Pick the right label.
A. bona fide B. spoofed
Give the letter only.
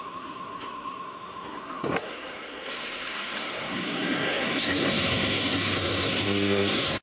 B